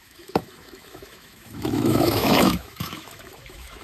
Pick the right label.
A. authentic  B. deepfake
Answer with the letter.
B